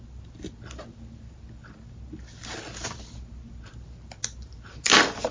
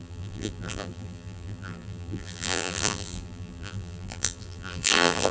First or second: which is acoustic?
first